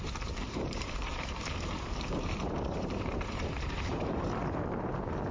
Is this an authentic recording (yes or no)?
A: no